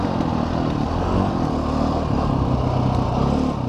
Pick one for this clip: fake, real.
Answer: real